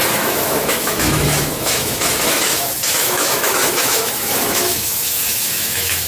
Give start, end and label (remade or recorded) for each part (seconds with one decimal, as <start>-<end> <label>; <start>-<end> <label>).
0.0-6.1 remade

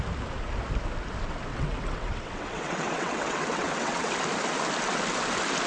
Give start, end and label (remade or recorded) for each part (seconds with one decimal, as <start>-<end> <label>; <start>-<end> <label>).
0.0-1.5 recorded; 1.5-4.1 remade; 4.1-5.7 recorded

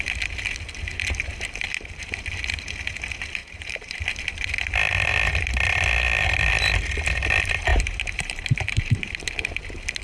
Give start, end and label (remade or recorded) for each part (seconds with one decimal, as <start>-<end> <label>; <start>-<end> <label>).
0.0-3.4 recorded; 3.4-4.0 remade; 4.0-7.7 recorded; 7.7-9.1 remade; 9.1-10.0 recorded

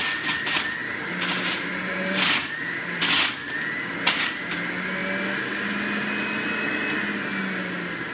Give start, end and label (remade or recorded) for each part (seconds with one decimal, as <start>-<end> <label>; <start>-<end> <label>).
0.0-0.8 recorded; 0.8-3.0 remade; 3.0-8.1 recorded

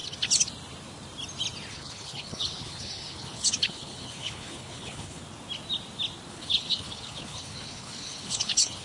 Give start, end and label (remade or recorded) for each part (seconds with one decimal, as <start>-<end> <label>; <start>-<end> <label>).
0.0-1.7 recorded; 1.7-5.2 remade; 5.2-6.3 recorded; 6.3-8.8 remade

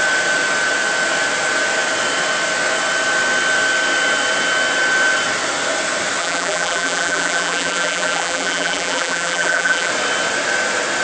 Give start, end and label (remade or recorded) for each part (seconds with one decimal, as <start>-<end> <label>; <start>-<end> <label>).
0.0-6.2 recorded; 6.2-9.9 remade; 9.9-11.0 recorded

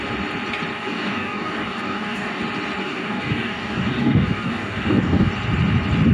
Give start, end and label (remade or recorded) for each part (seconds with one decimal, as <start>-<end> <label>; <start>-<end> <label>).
0.0-0.7 recorded; 0.7-2.4 remade; 2.4-2.8 recorded; 2.8-5.3 remade; 5.3-6.1 recorded

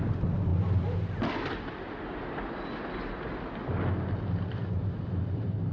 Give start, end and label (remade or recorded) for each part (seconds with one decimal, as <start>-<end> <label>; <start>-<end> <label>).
0.0-5.7 recorded